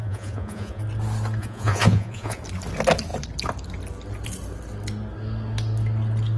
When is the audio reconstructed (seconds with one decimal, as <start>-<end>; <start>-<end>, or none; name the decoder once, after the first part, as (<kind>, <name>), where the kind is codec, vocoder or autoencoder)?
0.0-0.8 (vocoder, Vocos); 1.4-2.4